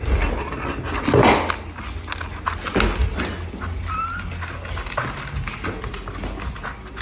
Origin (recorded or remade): recorded